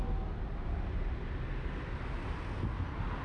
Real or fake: real